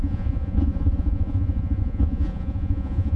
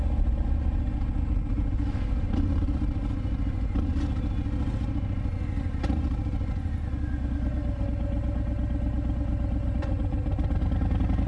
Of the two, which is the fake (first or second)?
first